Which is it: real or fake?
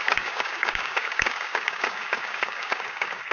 fake